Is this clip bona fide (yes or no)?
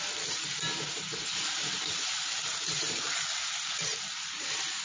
yes